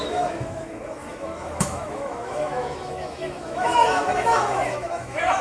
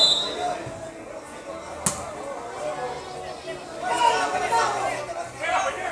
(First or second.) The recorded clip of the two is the second